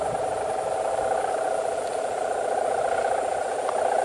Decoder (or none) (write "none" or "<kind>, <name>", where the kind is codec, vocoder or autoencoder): none